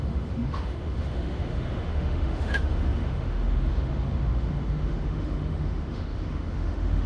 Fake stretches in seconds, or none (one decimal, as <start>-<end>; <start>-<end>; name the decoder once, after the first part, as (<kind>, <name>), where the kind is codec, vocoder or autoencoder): 0.0-7.1 (autoencoder, DAC-VAE)